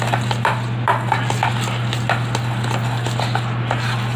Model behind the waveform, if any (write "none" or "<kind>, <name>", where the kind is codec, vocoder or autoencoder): none